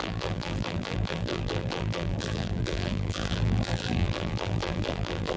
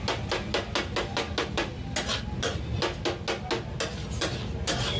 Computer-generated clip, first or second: first